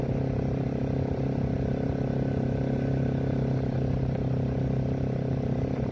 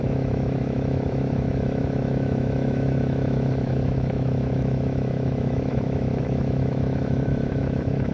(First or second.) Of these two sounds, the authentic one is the first